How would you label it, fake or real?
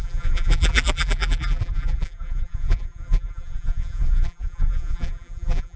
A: fake